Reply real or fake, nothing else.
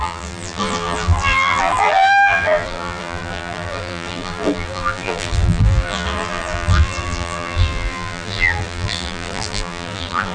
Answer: fake